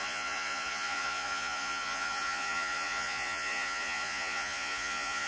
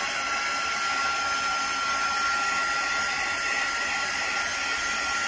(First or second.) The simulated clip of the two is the first